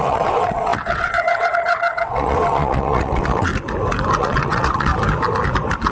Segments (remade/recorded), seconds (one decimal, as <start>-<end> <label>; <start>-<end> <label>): 0.0-3.5 remade; 3.5-4.2 recorded; 4.2-4.9 remade; 4.9-5.9 recorded